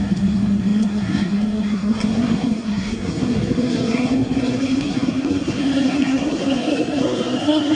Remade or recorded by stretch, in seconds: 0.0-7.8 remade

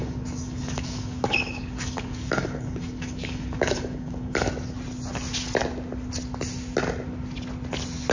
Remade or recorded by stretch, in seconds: 0.0-4.5 remade; 4.5-8.1 recorded

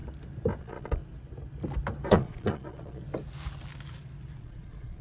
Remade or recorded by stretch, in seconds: 0.0-0.6 recorded; 0.6-1.0 remade; 1.0-2.1 recorded; 2.1-3.0 remade; 3.0-4.4 recorded; 4.4-5.0 remade

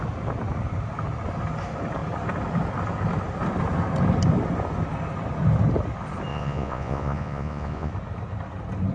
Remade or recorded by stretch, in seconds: 0.0-6.3 recorded; 6.3-7.9 remade; 7.9-8.9 recorded

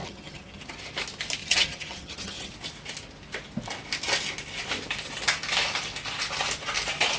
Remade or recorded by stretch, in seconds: 0.0-0.6 remade; 0.6-1.4 recorded; 1.4-2.5 remade; 2.5-7.2 recorded

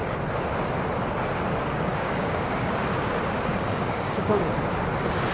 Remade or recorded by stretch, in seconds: 0.0-1.9 recorded; 1.9-2.7 remade; 2.7-3.5 recorded; 3.5-4.5 remade; 4.5-5.3 recorded

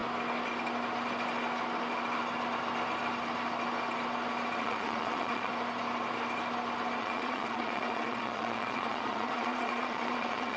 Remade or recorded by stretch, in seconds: 0.0-4.6 recorded; 4.6-5.5 remade; 5.5-7.0 recorded; 7.0-10.6 remade